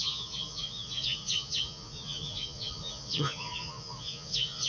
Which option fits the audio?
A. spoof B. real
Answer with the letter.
A